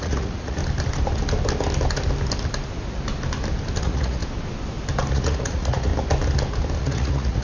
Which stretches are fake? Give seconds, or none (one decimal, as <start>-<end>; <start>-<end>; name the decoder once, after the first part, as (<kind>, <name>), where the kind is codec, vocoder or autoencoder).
0.0-0.6 (vocoder, Vocos); 3.8-4.2; 5.1-5.9; 6.8-7.4